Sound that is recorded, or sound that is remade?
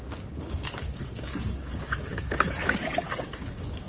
remade